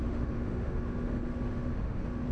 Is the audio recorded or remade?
remade